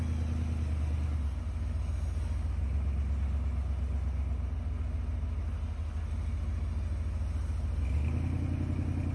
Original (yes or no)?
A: yes